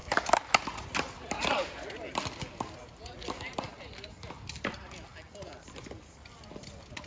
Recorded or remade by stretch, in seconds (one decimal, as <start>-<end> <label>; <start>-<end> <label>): 0.0-7.1 recorded